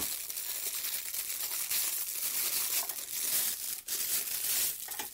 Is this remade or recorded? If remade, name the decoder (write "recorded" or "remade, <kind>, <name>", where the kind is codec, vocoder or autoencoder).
recorded